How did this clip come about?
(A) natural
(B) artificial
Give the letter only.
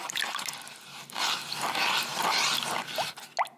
A